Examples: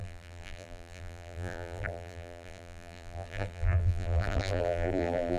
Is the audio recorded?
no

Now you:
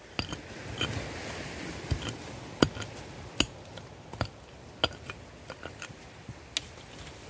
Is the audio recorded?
yes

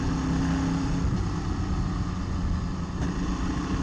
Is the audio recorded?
yes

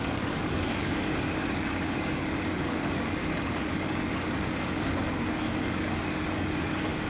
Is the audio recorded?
no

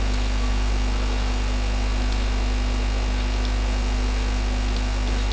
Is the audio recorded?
yes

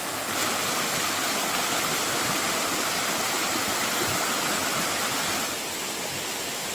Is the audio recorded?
yes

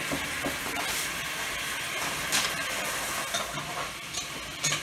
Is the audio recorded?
yes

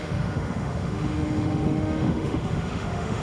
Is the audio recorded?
no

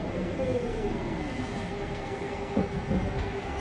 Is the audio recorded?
no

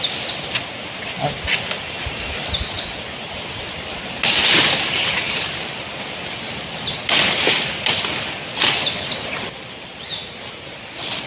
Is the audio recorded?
yes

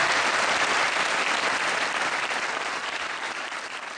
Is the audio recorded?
yes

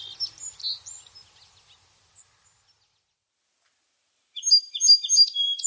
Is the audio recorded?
yes